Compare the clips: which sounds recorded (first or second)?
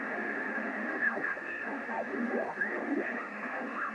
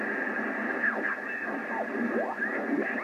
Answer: second